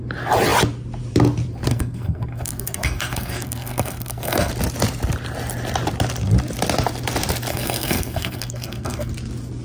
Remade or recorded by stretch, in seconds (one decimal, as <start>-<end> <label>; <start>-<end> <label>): 0.0-1.7 recorded; 1.7-4.5 remade; 4.5-7.5 recorded; 7.5-9.1 remade; 9.1-9.6 recorded